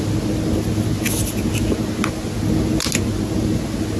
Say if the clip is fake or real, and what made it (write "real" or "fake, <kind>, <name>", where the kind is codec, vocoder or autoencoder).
real